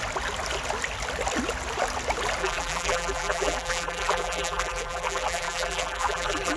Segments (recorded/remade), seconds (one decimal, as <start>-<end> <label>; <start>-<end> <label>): 0.0-2.4 recorded; 2.4-6.6 remade